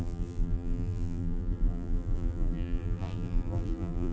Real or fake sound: fake